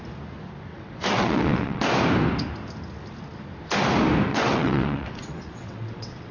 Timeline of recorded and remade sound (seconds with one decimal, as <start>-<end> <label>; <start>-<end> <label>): 0.0-0.7 recorded; 0.7-1.8 remade; 1.8-4.3 recorded; 4.3-6.3 remade